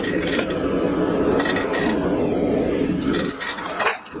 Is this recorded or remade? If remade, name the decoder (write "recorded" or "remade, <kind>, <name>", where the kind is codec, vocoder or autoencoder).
recorded